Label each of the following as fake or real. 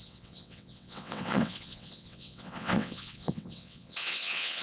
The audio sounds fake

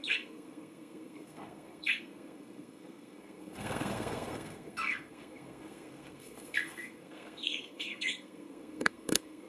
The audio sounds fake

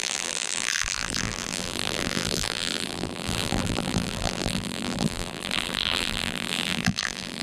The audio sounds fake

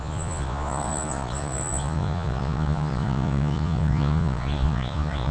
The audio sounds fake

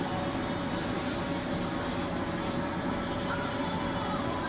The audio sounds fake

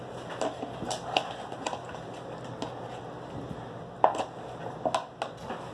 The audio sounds real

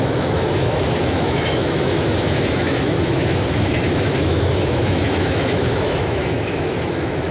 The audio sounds fake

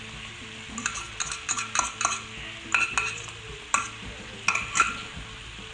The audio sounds real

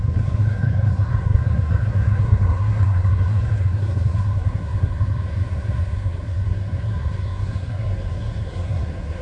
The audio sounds fake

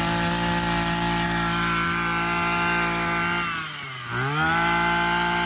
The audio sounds real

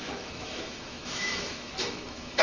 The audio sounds fake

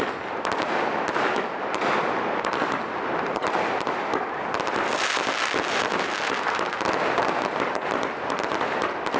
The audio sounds real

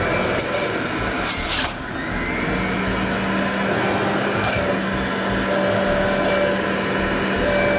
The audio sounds real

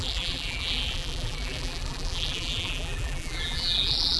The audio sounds fake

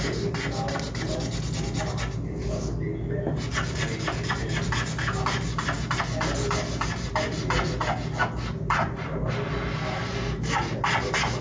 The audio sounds real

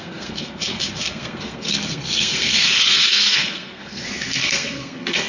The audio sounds fake